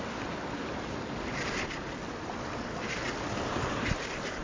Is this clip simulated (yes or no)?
no